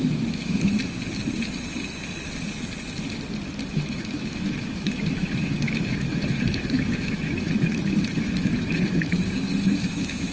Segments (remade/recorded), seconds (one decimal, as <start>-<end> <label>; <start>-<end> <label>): 0.0-0.8 remade; 0.8-3.7 recorded; 3.7-10.3 remade